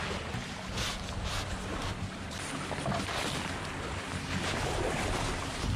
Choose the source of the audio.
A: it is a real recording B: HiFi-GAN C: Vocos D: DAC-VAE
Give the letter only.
A